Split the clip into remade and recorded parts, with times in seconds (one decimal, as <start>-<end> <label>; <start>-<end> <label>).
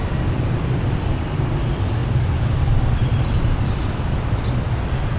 0.0-5.2 recorded